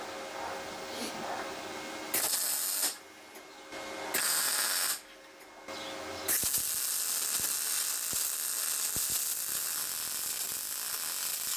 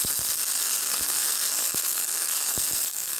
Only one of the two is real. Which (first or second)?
first